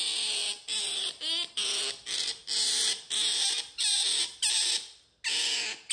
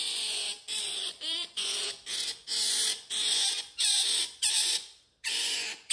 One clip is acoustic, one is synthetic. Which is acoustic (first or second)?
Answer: first